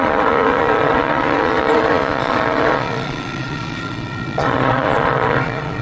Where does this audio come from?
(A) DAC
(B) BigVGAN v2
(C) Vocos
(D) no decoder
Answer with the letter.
C